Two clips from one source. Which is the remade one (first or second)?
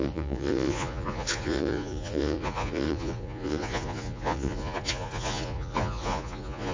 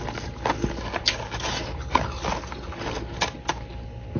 first